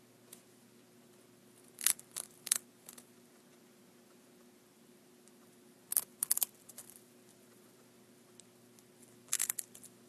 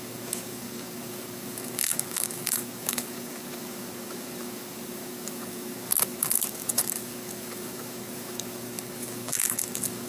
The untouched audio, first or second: first